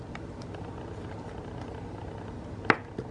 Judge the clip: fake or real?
real